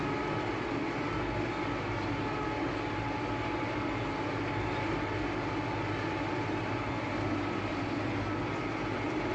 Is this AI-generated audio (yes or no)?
no